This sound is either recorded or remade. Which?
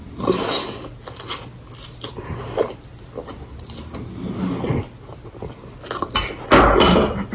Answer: recorded